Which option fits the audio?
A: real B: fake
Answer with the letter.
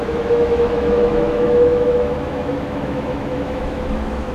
B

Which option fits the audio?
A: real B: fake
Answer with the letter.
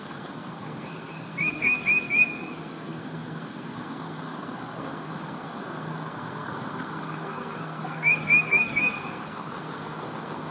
B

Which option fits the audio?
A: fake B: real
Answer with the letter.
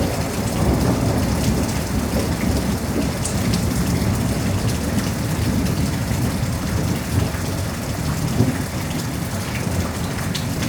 B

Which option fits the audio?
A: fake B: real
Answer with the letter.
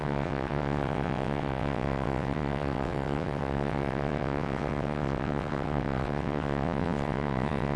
A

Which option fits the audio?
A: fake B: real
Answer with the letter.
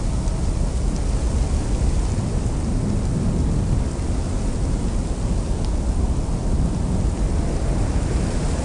B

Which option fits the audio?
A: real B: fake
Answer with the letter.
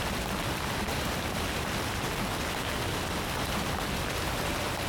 A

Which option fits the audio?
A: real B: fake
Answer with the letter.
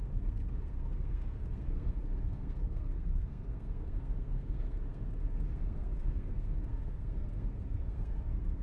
B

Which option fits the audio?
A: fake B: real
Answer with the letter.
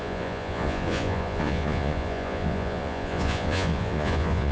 A